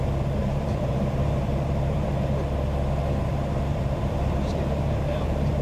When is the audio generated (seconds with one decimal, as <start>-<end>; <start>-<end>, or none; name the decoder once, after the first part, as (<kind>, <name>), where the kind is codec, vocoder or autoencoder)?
0.4-2.1 (vocoder, BigVGAN v2); 3.7-5.6